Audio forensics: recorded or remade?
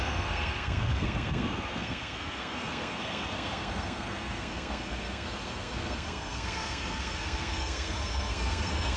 remade